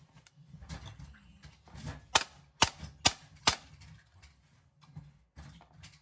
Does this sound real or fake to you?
real